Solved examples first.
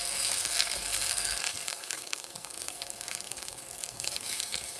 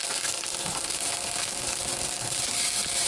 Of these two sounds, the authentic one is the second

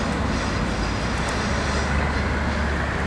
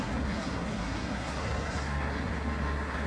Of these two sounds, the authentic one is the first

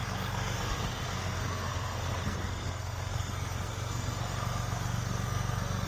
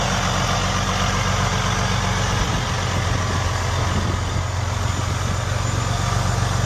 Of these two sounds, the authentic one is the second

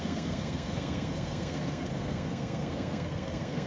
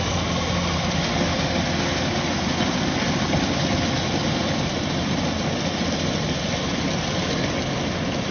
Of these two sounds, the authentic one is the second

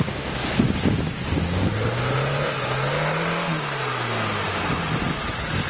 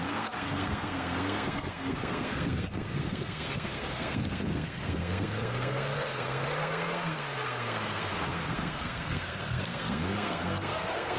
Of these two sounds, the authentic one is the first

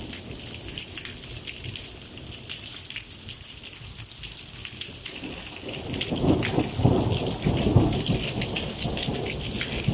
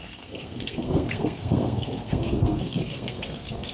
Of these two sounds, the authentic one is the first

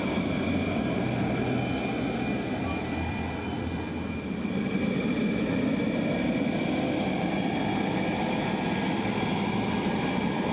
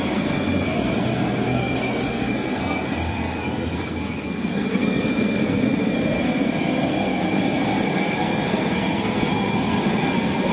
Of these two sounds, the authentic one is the first